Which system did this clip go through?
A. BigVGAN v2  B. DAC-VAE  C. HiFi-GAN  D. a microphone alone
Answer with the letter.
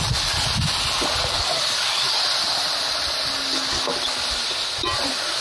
D